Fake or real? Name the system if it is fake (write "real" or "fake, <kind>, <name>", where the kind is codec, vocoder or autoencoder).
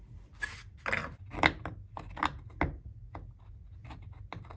real